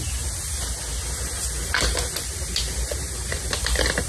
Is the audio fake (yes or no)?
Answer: no